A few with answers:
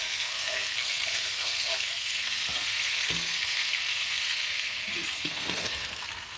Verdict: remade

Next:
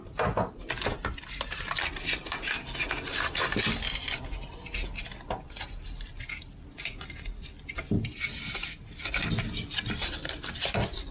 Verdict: recorded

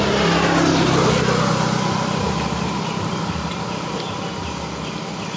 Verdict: recorded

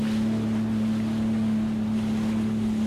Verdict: recorded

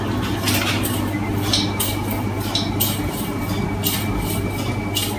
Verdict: recorded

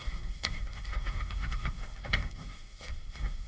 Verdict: remade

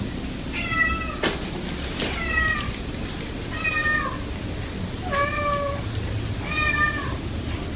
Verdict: recorded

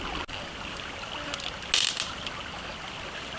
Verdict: recorded